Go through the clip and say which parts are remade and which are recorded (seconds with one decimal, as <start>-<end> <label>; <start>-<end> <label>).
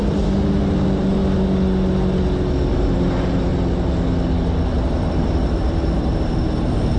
0.0-1.2 remade; 1.2-2.7 recorded; 2.7-3.5 remade; 3.5-4.7 recorded; 4.7-7.0 remade